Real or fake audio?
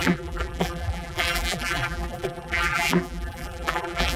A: fake